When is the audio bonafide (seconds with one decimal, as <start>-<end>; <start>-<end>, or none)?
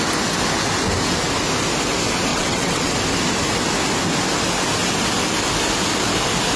0.0-2.3; 2.9-6.6